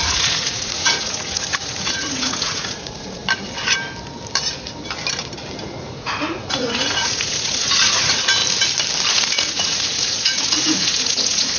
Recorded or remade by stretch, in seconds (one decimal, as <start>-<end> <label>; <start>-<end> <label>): 0.0-3.2 remade; 3.2-5.6 recorded; 5.6-8.4 remade; 8.4-9.1 recorded; 9.1-11.6 remade